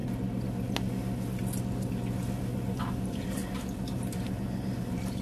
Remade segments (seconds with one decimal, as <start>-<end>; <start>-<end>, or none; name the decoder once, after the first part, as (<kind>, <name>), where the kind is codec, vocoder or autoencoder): 2.9-3.4 (vocoder, BigVGAN v2); 3.9-5.2